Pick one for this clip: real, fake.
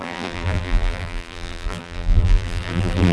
fake